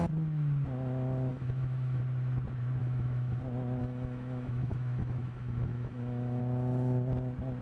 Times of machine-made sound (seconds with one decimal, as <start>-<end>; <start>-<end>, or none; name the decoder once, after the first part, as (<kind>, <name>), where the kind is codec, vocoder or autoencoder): 1.3-2.0 (autoencoder, DAC-VAE); 2.8-3.4; 3.8-6.4